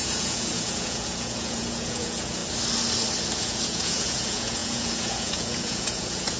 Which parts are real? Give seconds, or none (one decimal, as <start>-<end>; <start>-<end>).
2.4-3.4